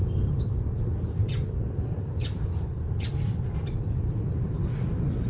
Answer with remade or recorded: recorded